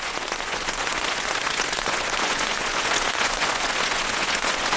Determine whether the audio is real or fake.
fake